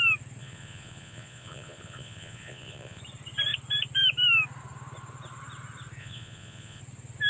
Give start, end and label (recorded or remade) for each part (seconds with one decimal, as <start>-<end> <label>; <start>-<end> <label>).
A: 0.0-0.4 recorded; 0.4-3.0 remade; 3.0-6.0 recorded; 6.0-6.8 remade; 6.8-7.3 recorded